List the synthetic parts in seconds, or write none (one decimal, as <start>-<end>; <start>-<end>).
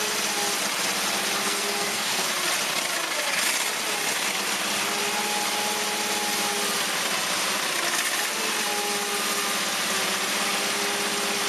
1.4-2.3